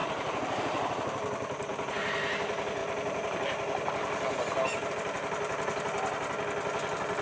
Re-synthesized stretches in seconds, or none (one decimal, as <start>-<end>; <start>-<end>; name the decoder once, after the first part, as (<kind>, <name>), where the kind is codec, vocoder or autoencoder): 0.0-1.9 (vocoder, BigVGAN v2)